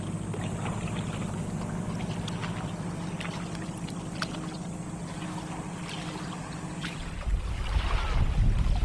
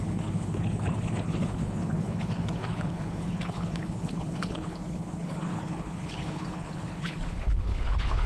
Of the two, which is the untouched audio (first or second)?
first